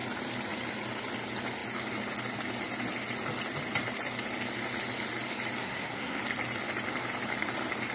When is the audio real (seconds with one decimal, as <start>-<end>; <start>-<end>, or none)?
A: 0.0-5.6; 6.2-7.9